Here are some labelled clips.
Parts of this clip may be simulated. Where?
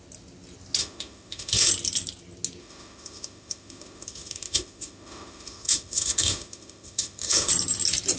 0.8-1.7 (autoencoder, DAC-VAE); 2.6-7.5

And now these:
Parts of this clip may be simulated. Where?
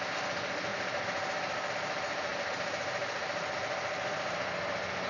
0.7-1.7 (vocoder, BigVGAN v2); 2.3-3.4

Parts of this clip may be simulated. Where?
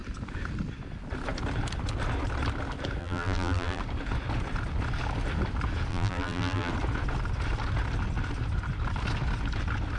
3.0-3.8 (vocoder, BigVGAN v2); 5.9-6.7